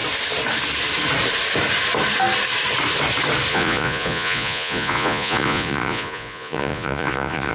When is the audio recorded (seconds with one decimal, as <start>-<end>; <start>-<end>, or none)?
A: 0.0-3.5